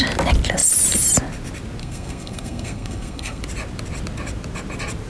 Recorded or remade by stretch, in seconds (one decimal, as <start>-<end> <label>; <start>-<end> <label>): 0.0-1.8 recorded; 1.8-3.4 remade; 3.4-5.1 recorded